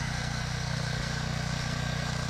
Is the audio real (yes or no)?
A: no